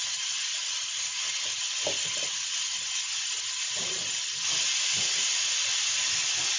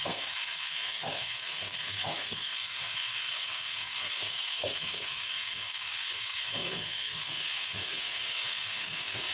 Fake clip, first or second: second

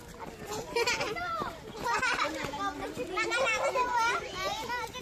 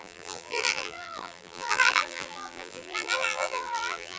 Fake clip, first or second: second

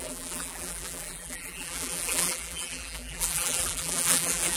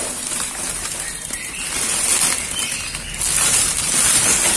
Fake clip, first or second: first